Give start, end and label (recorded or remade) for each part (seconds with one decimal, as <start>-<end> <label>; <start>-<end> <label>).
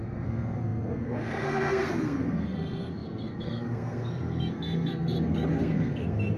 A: 0.0-6.4 remade